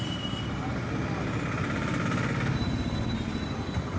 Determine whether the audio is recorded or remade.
recorded